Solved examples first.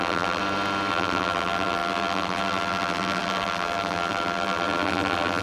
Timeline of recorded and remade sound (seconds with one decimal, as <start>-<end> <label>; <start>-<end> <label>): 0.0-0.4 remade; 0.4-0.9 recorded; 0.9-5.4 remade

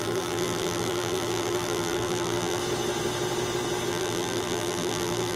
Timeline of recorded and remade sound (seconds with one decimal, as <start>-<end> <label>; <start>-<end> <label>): 0.0-2.6 remade; 2.6-3.9 recorded; 3.9-5.4 remade

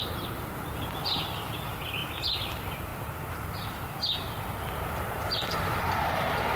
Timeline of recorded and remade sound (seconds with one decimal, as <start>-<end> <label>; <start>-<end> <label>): 0.0-2.0 remade; 2.0-2.5 recorded; 2.5-6.6 remade

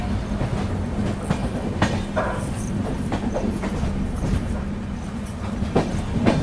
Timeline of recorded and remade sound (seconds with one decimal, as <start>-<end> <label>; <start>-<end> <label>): 0.0-1.4 recorded; 1.4-4.7 remade; 4.7-6.4 recorded

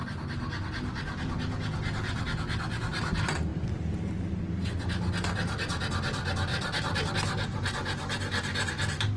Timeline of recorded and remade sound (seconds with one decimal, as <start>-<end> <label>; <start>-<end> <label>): 0.0-3.5 recorded; 3.5-4.4 remade; 4.4-6.5 recorded; 6.5-7.1 remade; 7.1-9.2 recorded

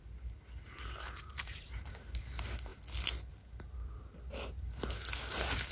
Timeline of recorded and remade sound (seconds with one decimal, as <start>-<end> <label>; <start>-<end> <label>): 0.0-1.3 recorded; 1.3-2.2 remade; 2.2-5.7 recorded